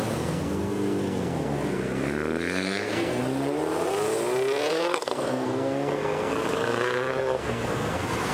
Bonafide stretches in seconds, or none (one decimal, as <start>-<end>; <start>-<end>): 3.2-4.7